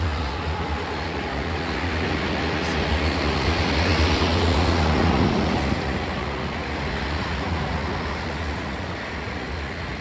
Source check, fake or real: fake